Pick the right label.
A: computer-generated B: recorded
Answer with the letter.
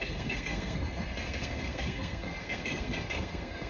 A